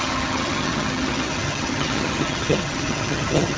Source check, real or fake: fake